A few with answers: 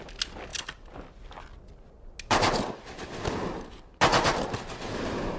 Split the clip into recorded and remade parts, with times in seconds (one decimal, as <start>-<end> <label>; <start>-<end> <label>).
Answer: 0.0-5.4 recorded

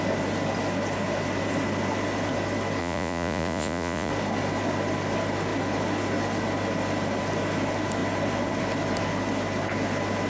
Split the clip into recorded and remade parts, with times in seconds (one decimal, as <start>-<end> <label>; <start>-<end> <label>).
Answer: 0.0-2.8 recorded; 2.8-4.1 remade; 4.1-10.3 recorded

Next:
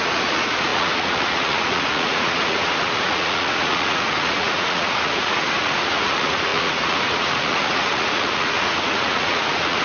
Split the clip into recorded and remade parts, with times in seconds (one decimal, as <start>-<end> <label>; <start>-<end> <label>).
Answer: 0.0-9.8 remade